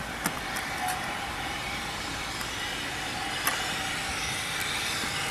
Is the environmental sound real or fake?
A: real